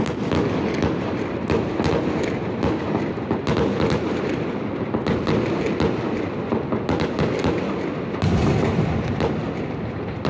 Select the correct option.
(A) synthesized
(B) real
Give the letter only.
B